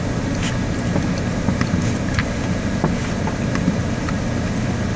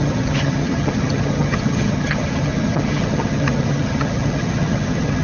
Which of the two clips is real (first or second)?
first